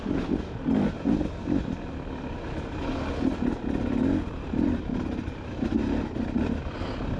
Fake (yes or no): no